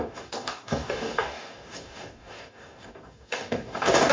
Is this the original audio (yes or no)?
no